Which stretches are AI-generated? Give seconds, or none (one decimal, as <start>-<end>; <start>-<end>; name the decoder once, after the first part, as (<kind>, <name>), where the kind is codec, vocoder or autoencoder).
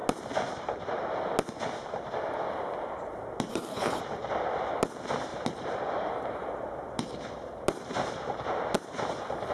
3.5-4.0 (codec, HILCodec)